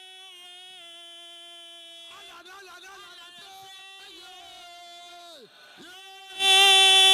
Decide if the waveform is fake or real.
real